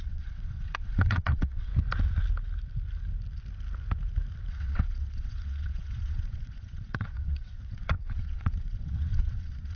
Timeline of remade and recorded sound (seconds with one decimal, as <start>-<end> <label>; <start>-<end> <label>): 0.0-1.7 remade; 1.7-4.5 recorded; 4.5-9.8 remade